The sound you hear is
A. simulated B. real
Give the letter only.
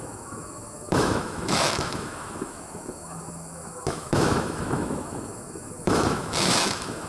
A